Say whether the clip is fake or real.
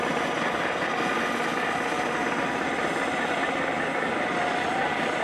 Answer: real